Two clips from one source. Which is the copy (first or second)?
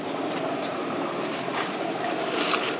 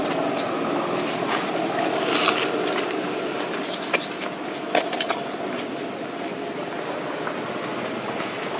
first